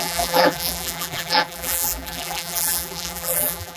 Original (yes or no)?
no